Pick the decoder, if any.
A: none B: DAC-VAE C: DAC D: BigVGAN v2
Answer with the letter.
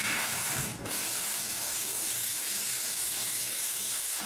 C